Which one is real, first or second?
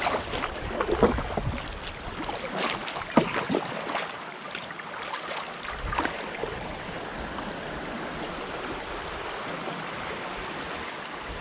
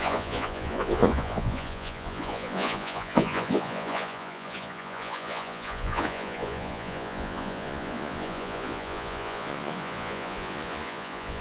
first